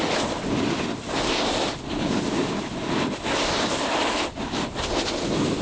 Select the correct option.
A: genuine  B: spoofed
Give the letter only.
A